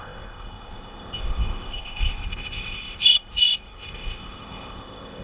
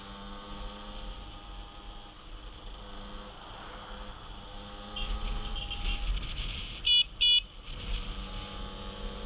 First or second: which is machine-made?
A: first